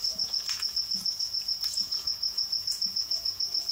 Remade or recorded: remade